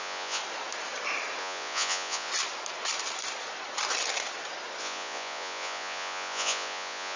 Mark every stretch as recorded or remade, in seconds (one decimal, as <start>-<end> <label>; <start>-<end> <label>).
0.0-0.4 remade; 0.4-1.4 recorded; 1.4-2.3 remade; 2.3-4.8 recorded; 4.8-7.2 remade